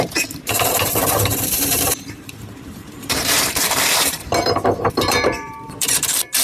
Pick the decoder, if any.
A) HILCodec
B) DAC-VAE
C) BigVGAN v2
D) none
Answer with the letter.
C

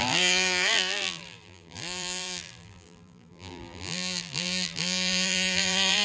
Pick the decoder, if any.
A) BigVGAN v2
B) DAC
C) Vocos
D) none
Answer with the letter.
A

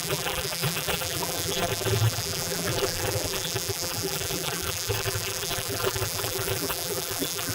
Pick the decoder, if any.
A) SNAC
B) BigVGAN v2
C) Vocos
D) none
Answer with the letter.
B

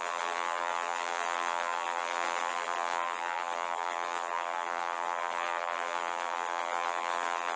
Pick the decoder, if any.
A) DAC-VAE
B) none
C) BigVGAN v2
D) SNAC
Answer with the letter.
C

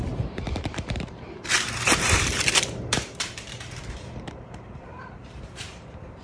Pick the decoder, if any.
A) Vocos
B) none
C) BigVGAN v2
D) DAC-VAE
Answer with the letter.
C